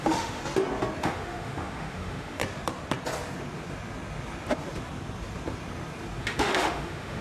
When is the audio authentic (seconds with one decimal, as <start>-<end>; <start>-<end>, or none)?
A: 0.4-1.0; 2.4-6.2